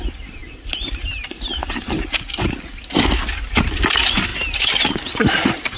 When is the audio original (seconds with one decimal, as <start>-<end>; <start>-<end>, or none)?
1.6-3.6